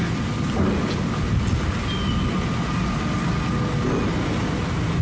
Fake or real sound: real